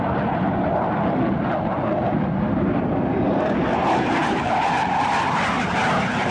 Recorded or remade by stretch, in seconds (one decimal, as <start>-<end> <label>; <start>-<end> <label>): 0.0-4.2 recorded; 4.2-5.6 remade; 5.6-6.3 recorded